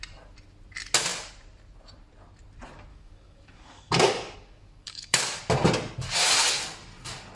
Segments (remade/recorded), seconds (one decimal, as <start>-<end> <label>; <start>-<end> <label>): 0.0-2.9 recorded; 2.9-5.4 remade; 5.4-7.4 recorded